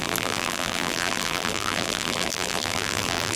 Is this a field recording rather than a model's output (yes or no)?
no